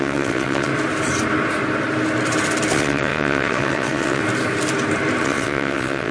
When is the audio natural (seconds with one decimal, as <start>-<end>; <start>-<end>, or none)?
0.7-2.7; 4.2-5.2